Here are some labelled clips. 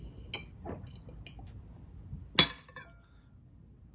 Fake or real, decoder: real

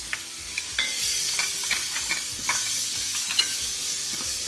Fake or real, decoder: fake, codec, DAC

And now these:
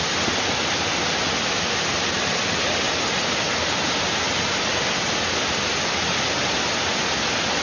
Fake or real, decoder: real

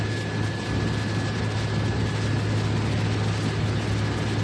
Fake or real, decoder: real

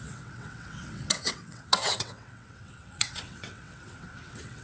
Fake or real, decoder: fake, vocoder, WaveNeXt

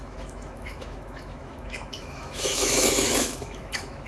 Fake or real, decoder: fake, autoencoder, DAC-VAE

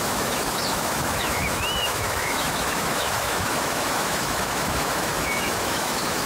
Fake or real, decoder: fake, autoencoder, DAC-VAE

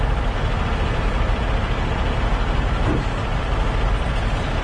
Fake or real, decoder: fake, vocoder, BigVGAN v2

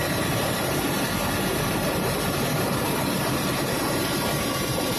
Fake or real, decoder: fake, vocoder, BigVGAN v2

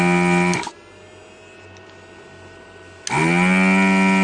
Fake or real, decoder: real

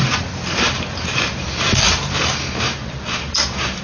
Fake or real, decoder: fake, vocoder, BigVGAN v2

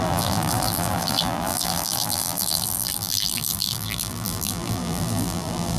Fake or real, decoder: fake, vocoder, BigVGAN v2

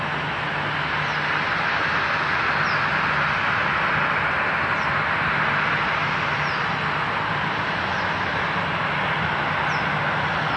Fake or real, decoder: real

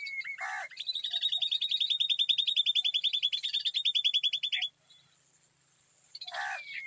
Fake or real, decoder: fake, vocoder, BigVGAN v2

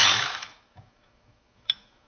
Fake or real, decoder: fake, autoencoder, DAC-VAE